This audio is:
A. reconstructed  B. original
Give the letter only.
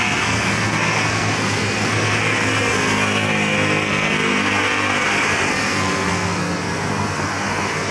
A